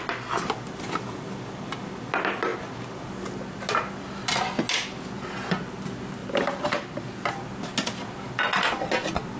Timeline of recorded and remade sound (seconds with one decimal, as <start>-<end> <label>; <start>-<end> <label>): 0.0-9.4 recorded